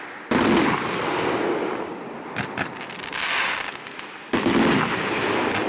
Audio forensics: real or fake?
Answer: real